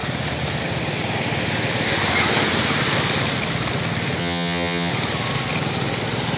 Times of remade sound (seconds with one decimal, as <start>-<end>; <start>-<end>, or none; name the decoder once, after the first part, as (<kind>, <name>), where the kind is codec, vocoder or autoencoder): 4.2-4.9 (vocoder, HiFi-GAN)

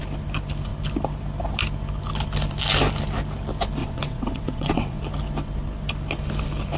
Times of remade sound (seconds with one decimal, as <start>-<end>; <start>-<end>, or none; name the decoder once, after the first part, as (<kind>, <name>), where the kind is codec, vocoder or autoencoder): 3.8-5.0 (vocoder, WaveNeXt)

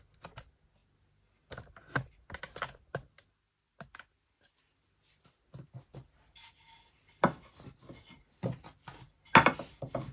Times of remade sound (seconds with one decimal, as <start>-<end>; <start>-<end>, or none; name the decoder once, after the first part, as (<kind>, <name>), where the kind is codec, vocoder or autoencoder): none

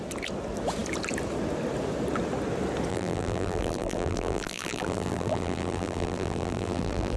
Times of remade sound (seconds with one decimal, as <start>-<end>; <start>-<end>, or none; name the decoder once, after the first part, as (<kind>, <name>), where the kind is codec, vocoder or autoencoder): 2.9-7.2 (vocoder, BigVGAN v2)

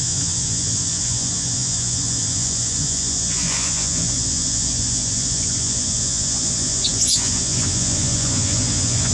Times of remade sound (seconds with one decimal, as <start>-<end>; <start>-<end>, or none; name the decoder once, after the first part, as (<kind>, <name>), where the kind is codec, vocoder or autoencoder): 0.0-9.1 (vocoder, Vocos)

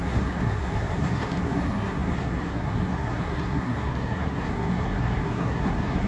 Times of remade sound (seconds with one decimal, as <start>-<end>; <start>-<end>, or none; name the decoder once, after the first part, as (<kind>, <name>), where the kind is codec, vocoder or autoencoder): 0.0-6.1 (codec, SNAC)

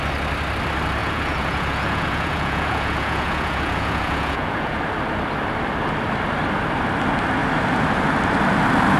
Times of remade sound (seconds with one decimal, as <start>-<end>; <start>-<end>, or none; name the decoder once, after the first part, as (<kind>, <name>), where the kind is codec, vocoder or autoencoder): 1.0-4.8 (vocoder, Vocos)